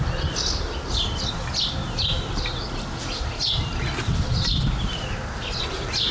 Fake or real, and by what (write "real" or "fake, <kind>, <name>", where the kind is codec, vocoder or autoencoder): real